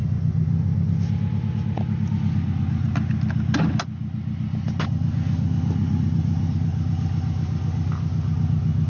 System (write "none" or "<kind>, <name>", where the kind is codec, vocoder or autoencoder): none